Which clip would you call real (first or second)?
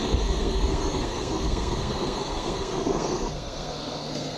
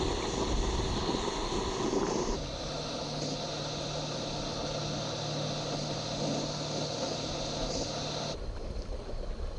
second